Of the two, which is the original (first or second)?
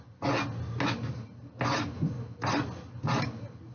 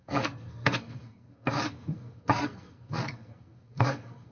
first